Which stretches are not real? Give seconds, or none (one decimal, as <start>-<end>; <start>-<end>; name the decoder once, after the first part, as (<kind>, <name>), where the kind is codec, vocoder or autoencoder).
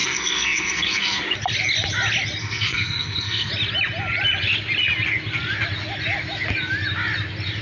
0.0-1.2 (codec, SNAC); 2.4-3.5